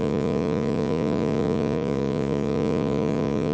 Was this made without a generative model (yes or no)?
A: no